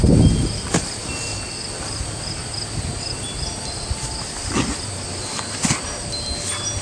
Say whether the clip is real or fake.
real